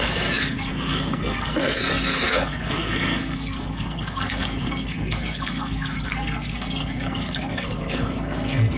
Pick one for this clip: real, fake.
fake